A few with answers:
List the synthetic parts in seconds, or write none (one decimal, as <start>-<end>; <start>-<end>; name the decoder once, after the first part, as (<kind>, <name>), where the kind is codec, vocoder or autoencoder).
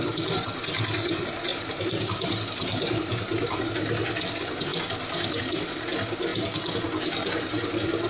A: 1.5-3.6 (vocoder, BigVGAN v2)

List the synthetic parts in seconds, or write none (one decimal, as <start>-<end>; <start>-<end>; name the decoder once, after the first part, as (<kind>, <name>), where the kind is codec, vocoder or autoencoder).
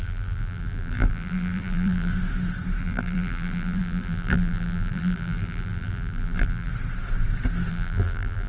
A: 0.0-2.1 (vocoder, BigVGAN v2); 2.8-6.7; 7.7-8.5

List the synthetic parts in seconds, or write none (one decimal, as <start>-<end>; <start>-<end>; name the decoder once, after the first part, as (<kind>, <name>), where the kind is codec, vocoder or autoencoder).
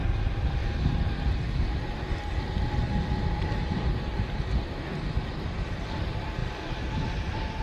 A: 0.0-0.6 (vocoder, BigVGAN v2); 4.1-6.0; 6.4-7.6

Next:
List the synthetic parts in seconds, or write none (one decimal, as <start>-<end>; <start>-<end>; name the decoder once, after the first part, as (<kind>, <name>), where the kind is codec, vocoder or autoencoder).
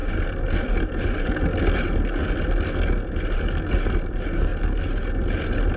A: 0.6-1.5 (vocoder, BigVGAN v2); 4.0-4.5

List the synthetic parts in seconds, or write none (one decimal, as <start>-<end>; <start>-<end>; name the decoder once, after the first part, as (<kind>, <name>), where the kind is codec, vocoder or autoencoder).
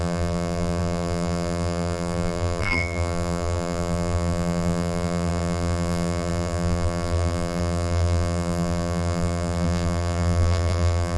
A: 0.0-11.2 (vocoder, BigVGAN v2)